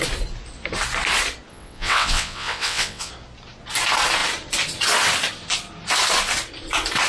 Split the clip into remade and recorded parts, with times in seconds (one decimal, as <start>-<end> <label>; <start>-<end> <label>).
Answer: 0.0-1.5 recorded; 1.5-3.1 remade; 3.1-7.1 recorded